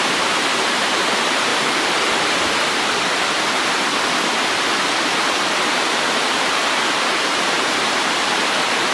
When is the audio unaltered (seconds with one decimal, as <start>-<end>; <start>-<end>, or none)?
1.5-5.1

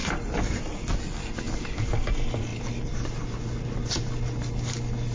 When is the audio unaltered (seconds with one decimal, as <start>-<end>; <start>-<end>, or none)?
0.7-2.5; 3.4-5.1

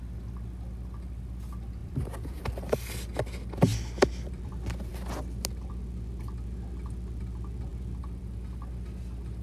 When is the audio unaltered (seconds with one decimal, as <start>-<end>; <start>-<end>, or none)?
0.0-1.8; 2.4-3.7; 4.5-9.4

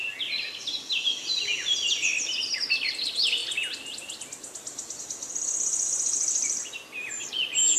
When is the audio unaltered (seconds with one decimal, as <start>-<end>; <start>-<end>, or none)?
0.0-7.8

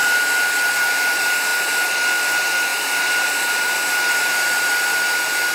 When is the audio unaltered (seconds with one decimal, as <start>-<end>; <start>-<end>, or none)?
0.0-2.7; 4.6-5.5